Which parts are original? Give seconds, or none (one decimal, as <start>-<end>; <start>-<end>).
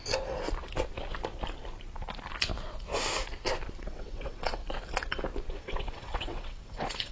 0.0-3.8; 4.6-5.5